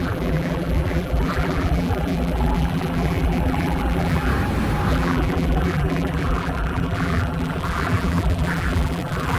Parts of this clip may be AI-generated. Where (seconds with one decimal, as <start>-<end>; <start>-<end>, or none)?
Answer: 0.0-4.3; 4.9-9.4